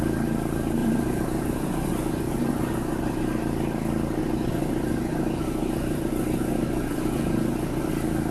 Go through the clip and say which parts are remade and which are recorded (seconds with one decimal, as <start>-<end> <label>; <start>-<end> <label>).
0.0-0.8 recorded; 0.8-3.4 remade; 3.4-4.2 recorded; 4.2-7.9 remade; 7.9-8.3 recorded